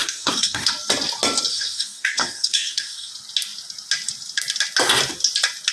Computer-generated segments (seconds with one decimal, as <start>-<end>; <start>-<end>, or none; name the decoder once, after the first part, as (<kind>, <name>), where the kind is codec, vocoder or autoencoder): 0.0-0.7 (codec, SNAC); 1.5-3.1